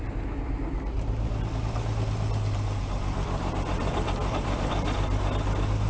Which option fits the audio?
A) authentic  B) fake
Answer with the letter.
A